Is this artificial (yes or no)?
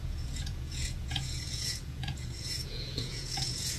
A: yes